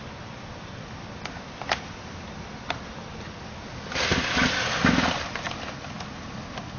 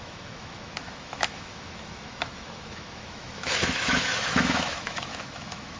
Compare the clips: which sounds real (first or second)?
first